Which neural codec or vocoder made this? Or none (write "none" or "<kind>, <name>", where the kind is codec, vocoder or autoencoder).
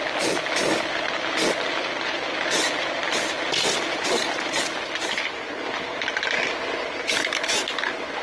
none